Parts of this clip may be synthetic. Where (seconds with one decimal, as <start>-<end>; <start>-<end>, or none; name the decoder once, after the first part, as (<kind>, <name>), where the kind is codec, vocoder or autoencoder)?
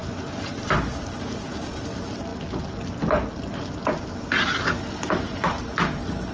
none